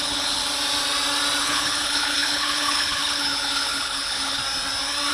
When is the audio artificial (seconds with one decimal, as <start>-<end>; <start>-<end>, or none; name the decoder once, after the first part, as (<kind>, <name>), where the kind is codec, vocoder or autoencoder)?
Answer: 0.0-0.4 (codec, HILCodec); 1.4-4.4